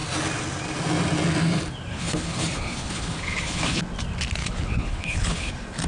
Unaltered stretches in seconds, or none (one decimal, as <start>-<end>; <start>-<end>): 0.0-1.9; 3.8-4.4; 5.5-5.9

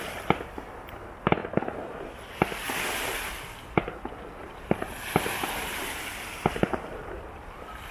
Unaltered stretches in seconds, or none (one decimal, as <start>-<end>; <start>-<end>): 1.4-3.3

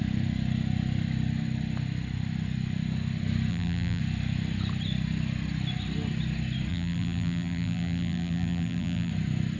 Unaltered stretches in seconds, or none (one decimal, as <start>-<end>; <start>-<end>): 0.0-3.5; 4.0-6.7; 9.1-9.6